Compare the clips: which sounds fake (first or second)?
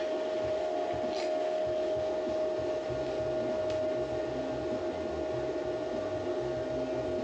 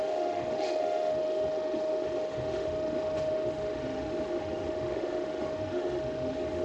second